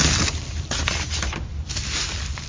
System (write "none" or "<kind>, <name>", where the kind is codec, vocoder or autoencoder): none